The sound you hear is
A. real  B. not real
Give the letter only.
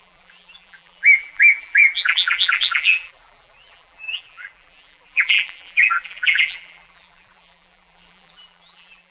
B